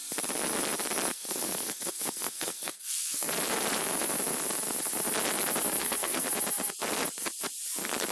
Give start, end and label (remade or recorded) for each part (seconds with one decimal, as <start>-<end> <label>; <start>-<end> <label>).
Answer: 0.0-1.1 recorded; 1.1-3.3 remade; 3.3-5.8 recorded; 5.8-6.3 remade; 6.3-8.1 recorded

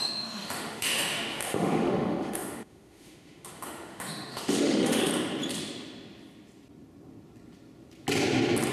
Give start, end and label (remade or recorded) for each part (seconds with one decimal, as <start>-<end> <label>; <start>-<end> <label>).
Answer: 0.0-5.1 remade; 5.1-8.7 recorded

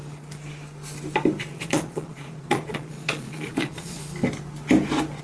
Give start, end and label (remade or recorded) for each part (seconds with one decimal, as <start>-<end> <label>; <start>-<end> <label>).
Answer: 0.0-1.4 recorded; 1.4-4.0 remade; 4.0-5.2 recorded

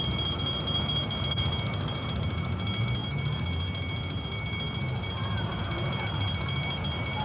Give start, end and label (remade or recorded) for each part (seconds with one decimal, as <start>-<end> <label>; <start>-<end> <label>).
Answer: 0.0-7.2 remade

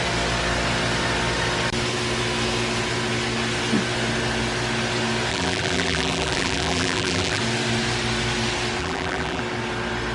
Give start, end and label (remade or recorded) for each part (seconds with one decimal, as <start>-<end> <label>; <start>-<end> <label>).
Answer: 0.0-5.3 recorded; 5.3-7.4 remade; 7.4-8.8 recorded; 8.8-9.4 remade; 9.4-10.1 recorded